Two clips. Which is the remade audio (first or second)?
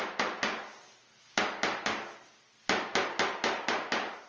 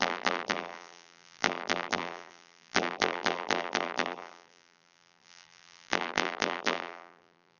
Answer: second